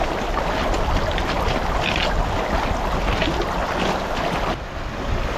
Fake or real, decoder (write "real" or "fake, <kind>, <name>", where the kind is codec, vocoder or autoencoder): real